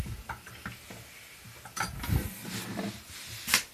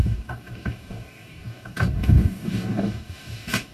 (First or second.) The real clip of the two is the first